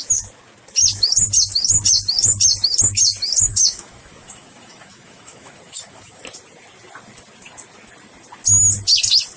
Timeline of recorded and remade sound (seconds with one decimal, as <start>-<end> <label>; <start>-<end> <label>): 0.0-3.5 recorded; 3.5-6.2 remade; 6.2-9.4 recorded